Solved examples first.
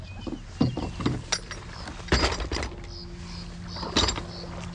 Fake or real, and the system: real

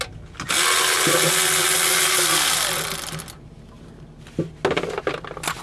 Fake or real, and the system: real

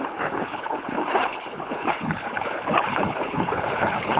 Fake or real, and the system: fake, codec, HILCodec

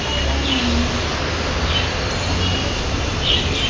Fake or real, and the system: real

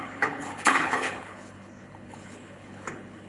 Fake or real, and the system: fake, codec, HILCodec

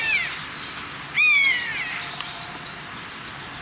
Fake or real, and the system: real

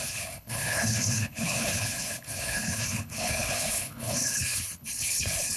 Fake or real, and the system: fake, codec, HILCodec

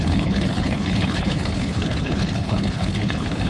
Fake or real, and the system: fake, codec, HILCodec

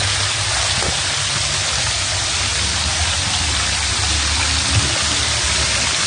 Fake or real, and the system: real